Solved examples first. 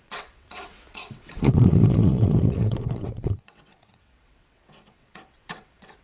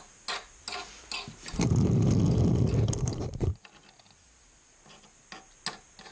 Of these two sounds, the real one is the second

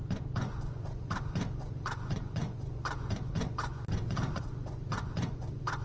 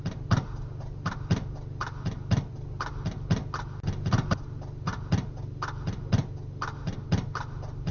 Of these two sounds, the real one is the second